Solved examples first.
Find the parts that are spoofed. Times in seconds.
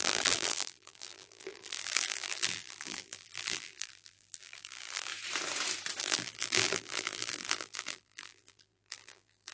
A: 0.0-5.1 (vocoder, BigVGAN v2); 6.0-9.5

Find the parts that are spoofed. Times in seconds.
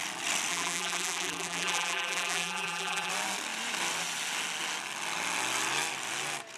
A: 0.5-3.1 (vocoder, BigVGAN v2)